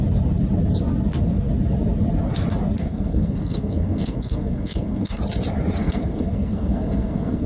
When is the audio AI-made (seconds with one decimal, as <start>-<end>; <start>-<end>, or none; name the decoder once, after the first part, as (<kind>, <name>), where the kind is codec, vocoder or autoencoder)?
2.8-5.2 (codec, SNAC); 5.8-7.5